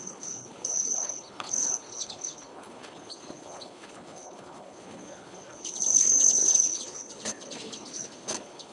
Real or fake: fake